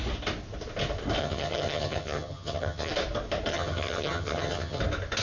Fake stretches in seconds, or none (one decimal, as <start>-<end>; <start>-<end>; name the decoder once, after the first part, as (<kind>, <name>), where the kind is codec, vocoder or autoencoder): 1.2-2.9 (vocoder, HiFi-GAN); 3.5-4.8